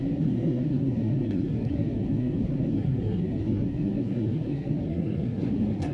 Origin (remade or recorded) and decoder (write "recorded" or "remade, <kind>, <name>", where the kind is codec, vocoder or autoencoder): remade, codec, SNAC